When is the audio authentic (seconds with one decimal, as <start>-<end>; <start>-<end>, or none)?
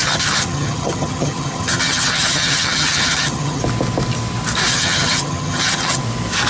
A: 3.6-4.7; 6.0-6.5